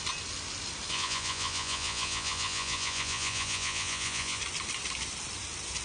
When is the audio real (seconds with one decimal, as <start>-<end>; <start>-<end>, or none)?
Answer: 0.0-0.9; 4.4-5.8